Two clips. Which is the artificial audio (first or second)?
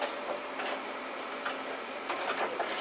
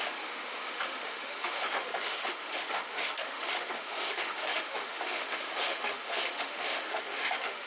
second